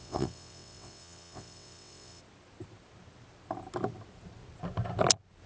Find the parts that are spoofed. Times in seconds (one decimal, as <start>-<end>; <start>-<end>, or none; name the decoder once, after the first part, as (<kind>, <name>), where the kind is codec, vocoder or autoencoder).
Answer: 0.0-2.2 (vocoder, WaveNeXt)